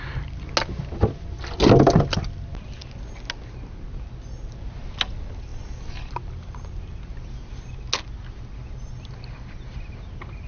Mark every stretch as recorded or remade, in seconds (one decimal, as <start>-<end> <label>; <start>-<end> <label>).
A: 0.0-10.5 recorded

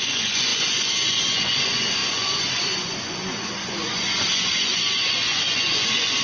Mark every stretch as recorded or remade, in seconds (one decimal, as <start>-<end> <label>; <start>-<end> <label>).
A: 0.0-6.2 remade

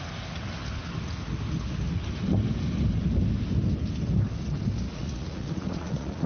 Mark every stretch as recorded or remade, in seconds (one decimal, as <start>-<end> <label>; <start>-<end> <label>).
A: 0.0-4.9 recorded; 4.9-6.3 remade

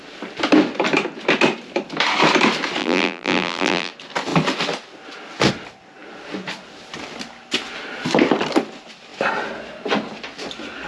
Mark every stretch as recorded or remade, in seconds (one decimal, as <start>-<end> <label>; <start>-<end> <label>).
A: 0.0-2.8 recorded; 2.8-3.9 remade; 3.9-10.9 recorded

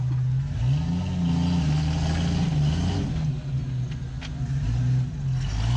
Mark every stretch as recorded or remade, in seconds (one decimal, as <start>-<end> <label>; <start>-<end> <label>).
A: 0.0-5.8 recorded

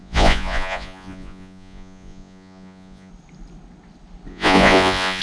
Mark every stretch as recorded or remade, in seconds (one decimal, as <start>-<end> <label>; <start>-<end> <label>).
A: 0.0-3.1 remade; 3.1-4.3 recorded; 4.3-5.2 remade